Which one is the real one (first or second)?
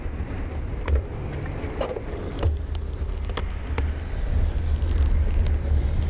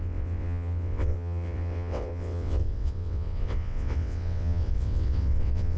first